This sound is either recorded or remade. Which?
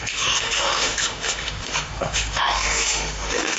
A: remade